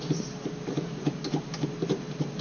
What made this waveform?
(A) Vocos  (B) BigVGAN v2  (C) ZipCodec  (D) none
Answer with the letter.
D